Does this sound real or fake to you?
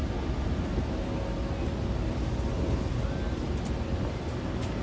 real